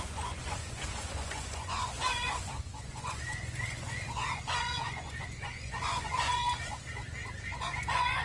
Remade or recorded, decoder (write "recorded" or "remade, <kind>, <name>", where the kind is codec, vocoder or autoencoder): remade, vocoder, Vocos